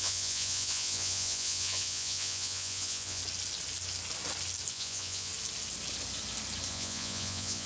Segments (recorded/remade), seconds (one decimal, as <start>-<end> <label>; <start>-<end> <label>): 0.0-3.2 remade; 3.2-4.7 recorded; 4.7-5.3 remade; 5.3-6.7 recorded; 6.7-7.7 remade